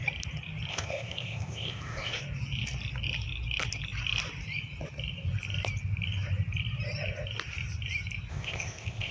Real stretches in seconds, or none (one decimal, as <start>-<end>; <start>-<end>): 0.0-0.7; 2.2-8.3